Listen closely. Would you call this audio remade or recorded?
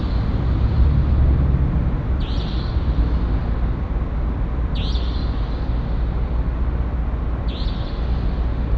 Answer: recorded